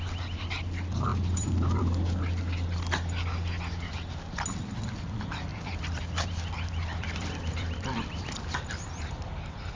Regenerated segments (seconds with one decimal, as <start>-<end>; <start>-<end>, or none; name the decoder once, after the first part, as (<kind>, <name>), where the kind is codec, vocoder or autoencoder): 1.1-1.8 (vocoder, BigVGAN v2); 5.5-8.3